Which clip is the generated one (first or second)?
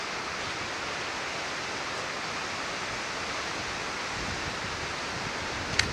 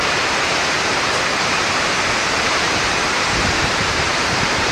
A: second